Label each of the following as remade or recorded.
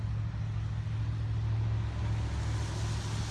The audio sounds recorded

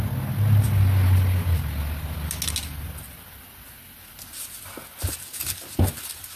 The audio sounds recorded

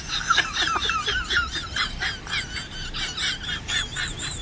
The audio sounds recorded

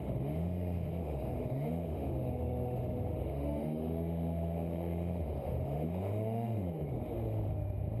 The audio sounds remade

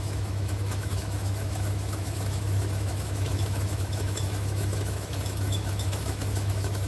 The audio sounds remade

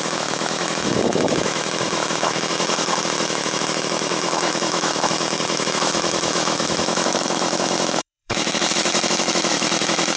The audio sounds remade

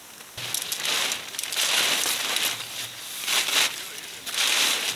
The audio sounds recorded